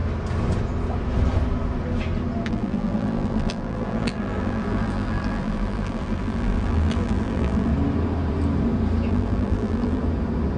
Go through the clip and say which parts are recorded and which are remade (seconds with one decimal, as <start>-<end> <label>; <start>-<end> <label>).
0.0-2.5 recorded; 2.5-7.7 remade; 7.7-9.1 recorded; 9.1-10.0 remade; 10.0-10.6 recorded